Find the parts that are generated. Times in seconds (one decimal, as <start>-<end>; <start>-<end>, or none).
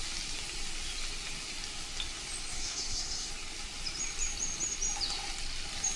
2.5-3.3